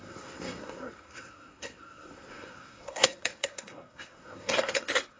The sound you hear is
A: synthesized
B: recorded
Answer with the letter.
A